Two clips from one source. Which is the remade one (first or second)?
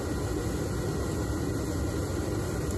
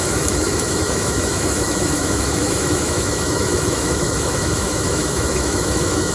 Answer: second